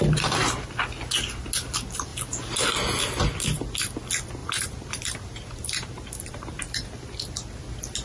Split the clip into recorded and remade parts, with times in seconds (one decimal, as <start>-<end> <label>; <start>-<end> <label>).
0.0-4.4 recorded; 4.4-6.6 remade; 6.6-8.0 recorded